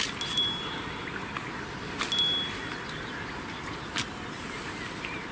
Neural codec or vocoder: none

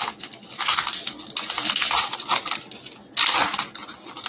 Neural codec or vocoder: none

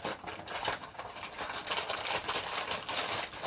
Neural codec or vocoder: none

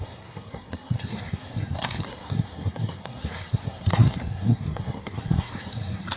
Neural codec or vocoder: codec, SNAC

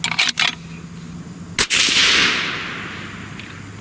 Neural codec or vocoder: none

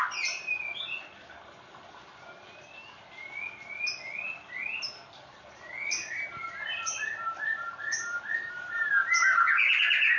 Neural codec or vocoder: none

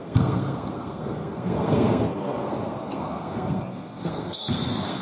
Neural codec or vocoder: codec, SNAC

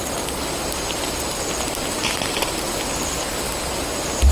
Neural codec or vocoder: none